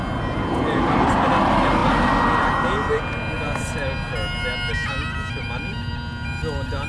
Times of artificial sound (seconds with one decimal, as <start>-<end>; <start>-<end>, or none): none